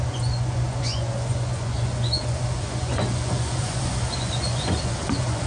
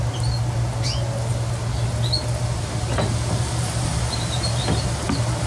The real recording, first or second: second